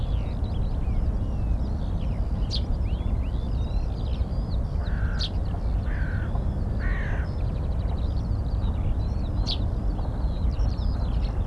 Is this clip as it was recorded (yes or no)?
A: yes